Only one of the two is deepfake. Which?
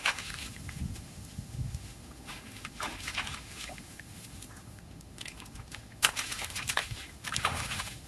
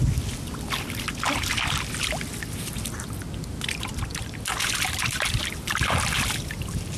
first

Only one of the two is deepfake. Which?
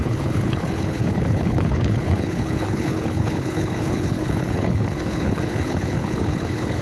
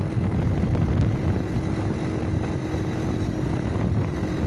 first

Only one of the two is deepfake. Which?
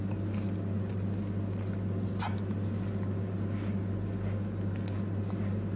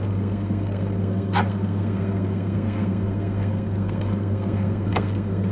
second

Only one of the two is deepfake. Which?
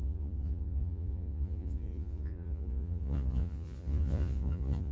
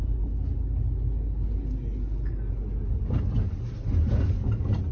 first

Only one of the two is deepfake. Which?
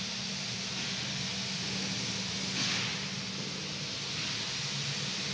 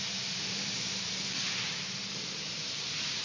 second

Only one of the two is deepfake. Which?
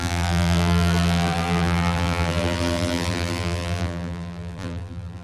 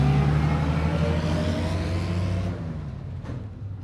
first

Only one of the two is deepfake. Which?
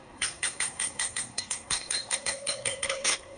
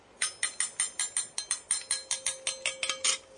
first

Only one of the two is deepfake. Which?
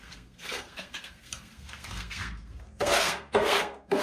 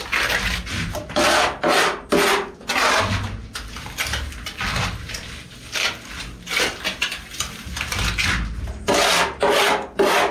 first